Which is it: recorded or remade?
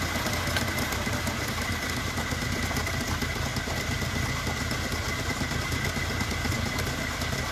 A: recorded